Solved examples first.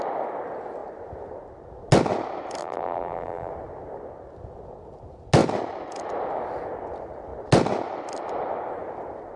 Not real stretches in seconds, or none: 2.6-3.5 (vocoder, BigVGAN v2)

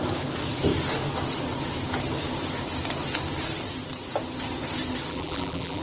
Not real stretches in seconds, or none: 5.1-5.8 (vocoder, BigVGAN v2)

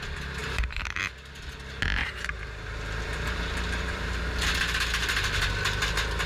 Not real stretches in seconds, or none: 0.4-1.0 (vocoder, BigVGAN v2); 2.0-4.2

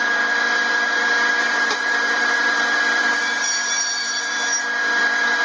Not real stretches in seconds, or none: 1.4-4.6 (vocoder, BigVGAN v2)